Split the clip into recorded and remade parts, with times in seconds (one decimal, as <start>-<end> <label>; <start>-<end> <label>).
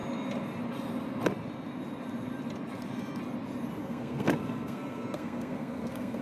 0.0-3.8 recorded; 3.8-6.2 remade